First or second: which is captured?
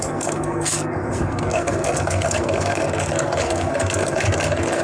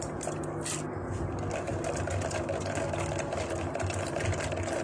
second